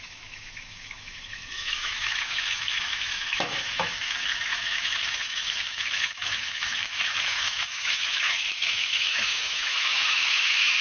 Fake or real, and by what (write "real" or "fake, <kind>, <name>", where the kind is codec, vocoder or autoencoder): fake, autoencoder, DAC-VAE